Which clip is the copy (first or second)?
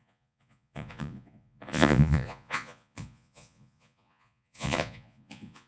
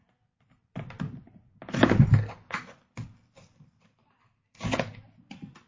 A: first